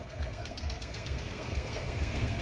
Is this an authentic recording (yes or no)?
no